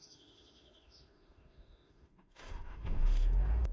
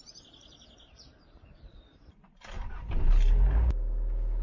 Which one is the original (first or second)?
second